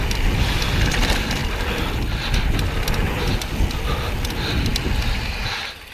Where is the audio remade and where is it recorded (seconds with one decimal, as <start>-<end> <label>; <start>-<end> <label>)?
0.0-5.9 recorded